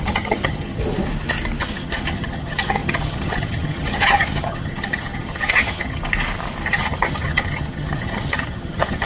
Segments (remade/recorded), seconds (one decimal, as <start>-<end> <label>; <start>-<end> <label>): 0.0-0.8 remade; 0.8-1.6 recorded; 1.6-6.0 remade; 6.0-6.7 recorded; 6.7-9.1 remade